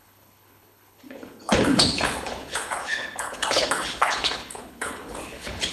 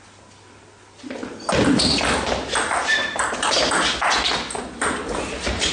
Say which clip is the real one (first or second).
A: second